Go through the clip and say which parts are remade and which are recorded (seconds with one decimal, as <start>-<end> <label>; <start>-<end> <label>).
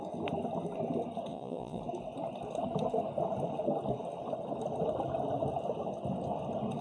0.0-1.3 recorded; 1.3-1.8 remade; 1.8-6.8 recorded